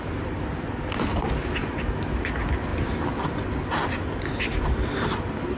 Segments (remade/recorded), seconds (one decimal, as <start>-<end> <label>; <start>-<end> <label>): 0.0-5.6 recorded